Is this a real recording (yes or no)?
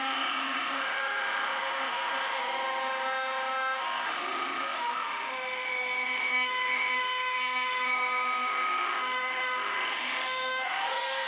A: no